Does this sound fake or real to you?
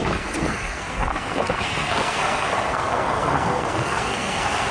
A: fake